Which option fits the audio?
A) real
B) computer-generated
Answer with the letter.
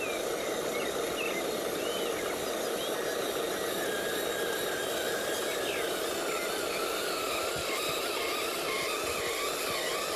A